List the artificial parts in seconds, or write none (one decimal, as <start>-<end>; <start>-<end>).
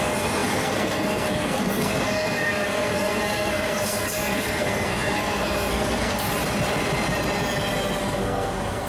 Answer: 0.0-6.3; 8.0-8.9